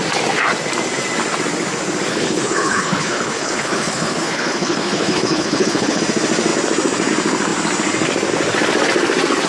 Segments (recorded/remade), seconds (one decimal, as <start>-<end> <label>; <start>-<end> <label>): 0.0-2.1 recorded; 2.1-6.0 remade; 6.0-9.5 recorded